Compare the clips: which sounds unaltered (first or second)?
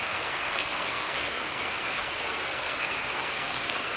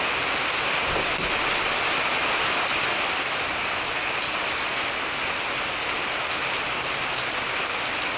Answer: second